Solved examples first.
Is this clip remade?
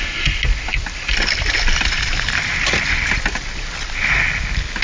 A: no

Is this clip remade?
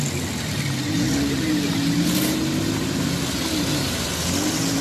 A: no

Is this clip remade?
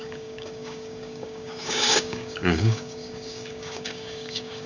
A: yes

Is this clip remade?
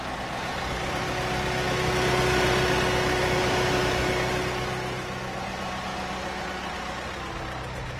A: no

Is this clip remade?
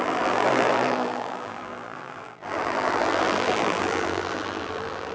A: yes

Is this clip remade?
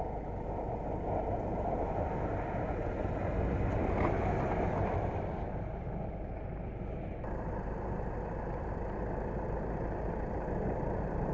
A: no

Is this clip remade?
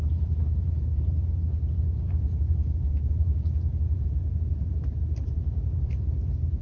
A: yes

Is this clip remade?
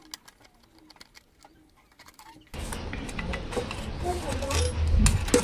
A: no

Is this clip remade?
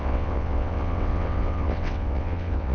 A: yes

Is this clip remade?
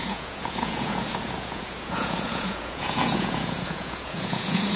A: yes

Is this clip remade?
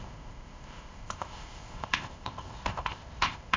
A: yes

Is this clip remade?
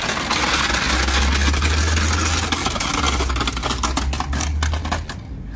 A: no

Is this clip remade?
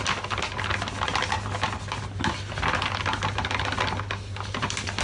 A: no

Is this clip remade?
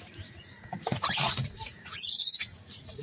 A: yes